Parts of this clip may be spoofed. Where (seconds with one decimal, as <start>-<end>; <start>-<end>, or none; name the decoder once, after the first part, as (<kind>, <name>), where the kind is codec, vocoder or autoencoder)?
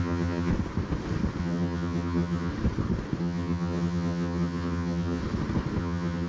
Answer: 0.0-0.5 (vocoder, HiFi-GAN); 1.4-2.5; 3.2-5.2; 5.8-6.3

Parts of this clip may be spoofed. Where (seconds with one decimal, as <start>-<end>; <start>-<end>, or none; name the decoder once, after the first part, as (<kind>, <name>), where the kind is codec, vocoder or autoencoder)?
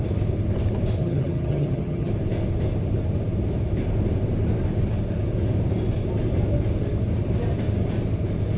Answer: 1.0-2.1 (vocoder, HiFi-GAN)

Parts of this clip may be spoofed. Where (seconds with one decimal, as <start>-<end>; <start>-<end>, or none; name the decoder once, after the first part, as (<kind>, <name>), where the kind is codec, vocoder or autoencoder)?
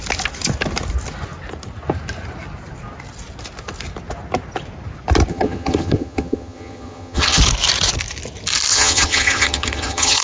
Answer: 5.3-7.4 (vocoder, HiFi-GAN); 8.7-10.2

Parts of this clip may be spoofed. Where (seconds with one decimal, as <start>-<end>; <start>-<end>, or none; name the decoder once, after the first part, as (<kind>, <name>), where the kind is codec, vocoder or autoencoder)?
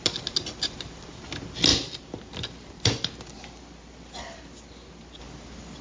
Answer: none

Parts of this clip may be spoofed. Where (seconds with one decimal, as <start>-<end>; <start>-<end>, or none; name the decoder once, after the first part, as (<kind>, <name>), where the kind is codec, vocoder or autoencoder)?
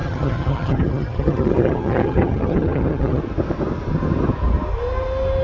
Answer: 0.0-3.2 (vocoder, HiFi-GAN)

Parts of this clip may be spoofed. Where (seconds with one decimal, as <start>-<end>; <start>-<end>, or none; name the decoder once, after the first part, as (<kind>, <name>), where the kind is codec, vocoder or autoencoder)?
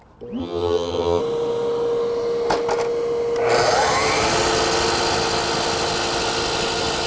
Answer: 0.4-1.2 (vocoder, HiFi-GAN)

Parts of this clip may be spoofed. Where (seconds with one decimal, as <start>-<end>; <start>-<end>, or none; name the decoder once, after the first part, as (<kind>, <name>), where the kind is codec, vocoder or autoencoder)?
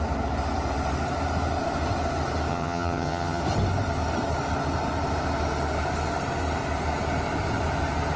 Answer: 2.5-3.4 (vocoder, HiFi-GAN)